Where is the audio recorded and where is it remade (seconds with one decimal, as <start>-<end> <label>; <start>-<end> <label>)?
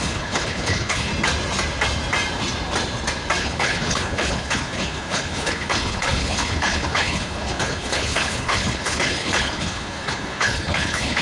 0.0-1.1 remade; 1.1-3.4 recorded; 3.4-11.2 remade